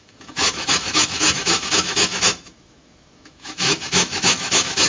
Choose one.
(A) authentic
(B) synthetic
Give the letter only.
B